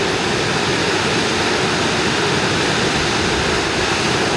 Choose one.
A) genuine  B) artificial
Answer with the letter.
A